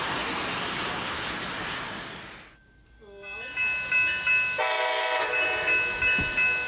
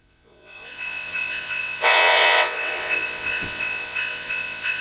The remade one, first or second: second